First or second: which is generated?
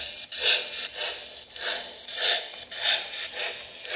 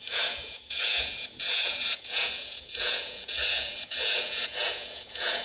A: second